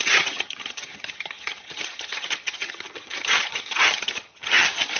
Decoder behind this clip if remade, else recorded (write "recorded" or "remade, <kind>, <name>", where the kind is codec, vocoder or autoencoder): remade, vocoder, HiFi-GAN